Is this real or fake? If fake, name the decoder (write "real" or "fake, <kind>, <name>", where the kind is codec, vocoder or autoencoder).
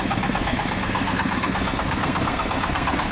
fake, codec, SNAC